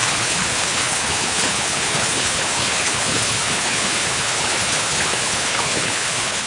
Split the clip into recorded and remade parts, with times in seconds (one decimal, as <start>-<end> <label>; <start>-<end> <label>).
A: 0.0-6.5 remade